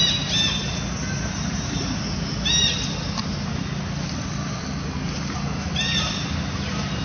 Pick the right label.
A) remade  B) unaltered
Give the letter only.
B